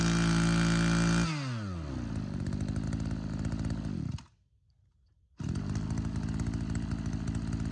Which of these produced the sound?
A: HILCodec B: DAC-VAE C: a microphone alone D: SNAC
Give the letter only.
C